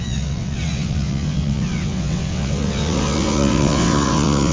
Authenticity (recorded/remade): remade